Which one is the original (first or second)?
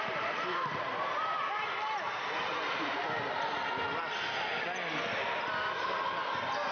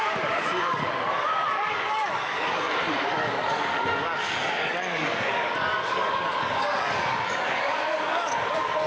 first